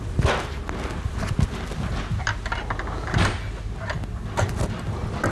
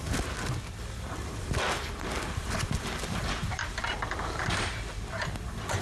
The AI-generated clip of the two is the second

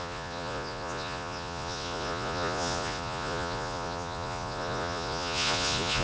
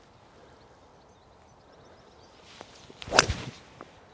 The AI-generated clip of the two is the first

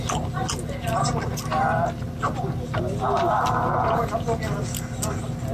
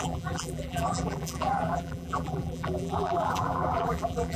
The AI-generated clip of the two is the second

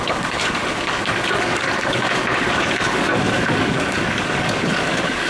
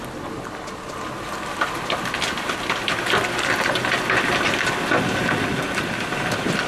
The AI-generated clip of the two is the first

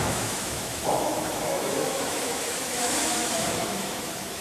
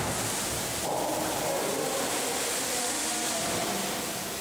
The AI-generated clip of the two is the first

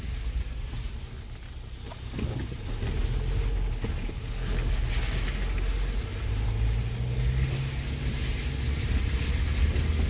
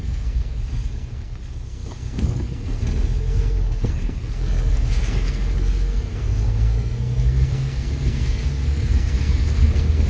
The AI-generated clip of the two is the second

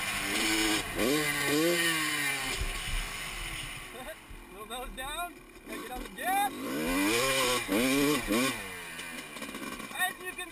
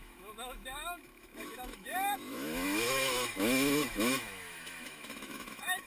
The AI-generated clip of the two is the second